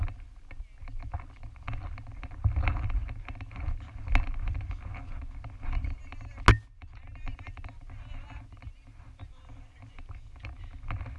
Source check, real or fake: real